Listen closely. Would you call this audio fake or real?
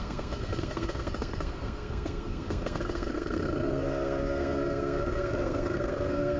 fake